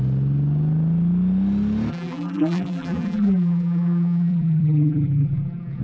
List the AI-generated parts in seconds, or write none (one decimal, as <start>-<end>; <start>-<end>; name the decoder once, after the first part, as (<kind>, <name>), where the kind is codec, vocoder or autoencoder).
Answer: 1.9-5.8 (vocoder, BigVGAN v2)